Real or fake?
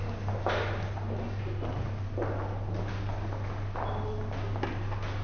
real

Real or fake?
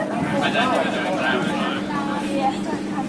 real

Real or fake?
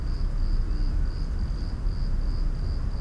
real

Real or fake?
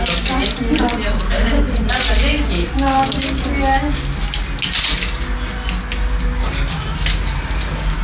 real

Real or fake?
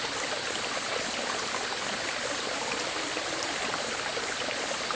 real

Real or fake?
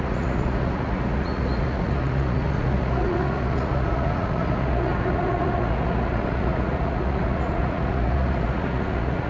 fake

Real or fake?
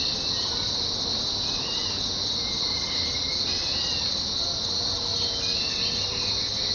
real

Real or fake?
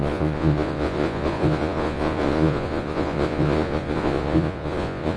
fake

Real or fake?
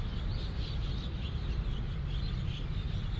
real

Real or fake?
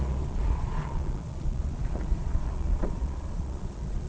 fake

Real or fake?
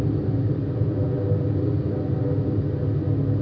real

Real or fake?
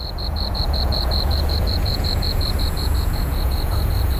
fake